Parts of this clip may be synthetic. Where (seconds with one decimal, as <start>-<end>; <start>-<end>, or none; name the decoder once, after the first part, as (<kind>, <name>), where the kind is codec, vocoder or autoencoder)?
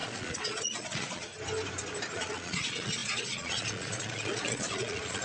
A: 0.0-1.3 (vocoder, Vocos); 2.1-5.2